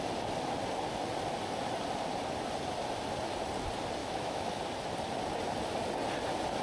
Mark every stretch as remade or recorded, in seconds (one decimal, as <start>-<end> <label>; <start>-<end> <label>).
0.0-4.0 recorded; 4.0-4.6 remade; 4.6-6.6 recorded